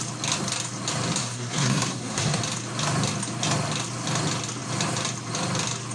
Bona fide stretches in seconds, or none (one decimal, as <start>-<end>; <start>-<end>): 0.0-1.2; 2.4-5.9